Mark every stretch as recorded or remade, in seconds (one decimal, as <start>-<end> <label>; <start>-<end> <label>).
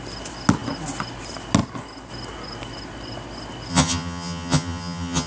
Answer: 0.0-3.7 recorded; 3.7-5.3 remade